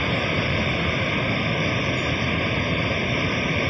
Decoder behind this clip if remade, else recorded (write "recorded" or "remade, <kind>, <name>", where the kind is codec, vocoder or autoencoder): recorded